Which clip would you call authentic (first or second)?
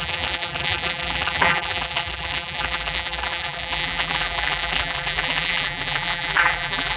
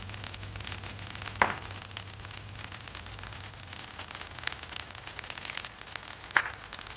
second